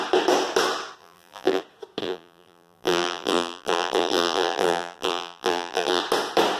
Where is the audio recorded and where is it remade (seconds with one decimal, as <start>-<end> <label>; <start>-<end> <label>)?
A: 0.0-1.0 recorded; 1.0-1.6 remade; 1.6-2.0 recorded; 2.0-6.0 remade; 6.0-6.6 recorded